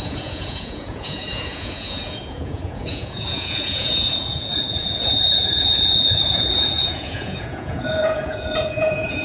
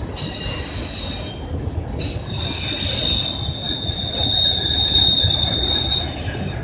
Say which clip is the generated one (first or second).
first